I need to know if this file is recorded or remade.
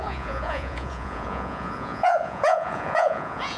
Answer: remade